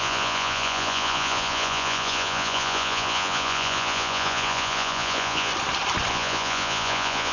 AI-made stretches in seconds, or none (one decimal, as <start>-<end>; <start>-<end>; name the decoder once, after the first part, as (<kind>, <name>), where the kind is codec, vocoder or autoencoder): 0.0-5.5 (vocoder, Vocos); 6.1-7.3